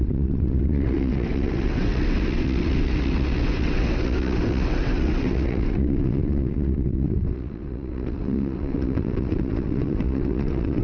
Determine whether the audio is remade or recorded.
remade